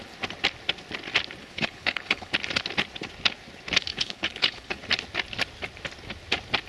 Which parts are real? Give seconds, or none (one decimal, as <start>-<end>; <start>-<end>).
0.0-1.4; 2.3-3.9; 4.8-6.7